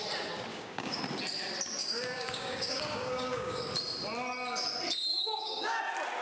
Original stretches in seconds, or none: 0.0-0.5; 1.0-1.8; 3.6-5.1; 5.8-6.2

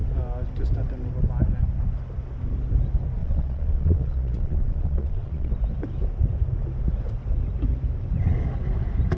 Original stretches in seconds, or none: 0.0-3.2; 5.5-9.2

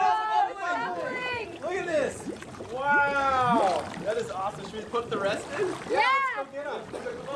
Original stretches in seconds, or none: 2.8-7.4

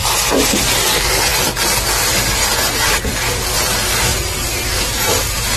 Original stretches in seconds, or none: 0.0-4.1; 4.7-5.6

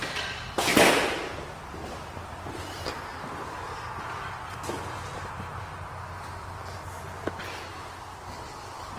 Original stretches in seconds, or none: 0.0-0.7; 3.1-9.0

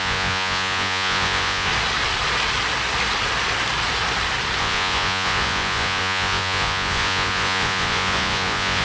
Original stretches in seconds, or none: 1.7-4.6

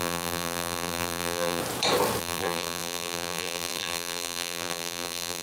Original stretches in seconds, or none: 1.6-2.2